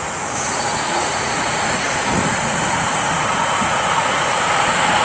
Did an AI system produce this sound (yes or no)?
yes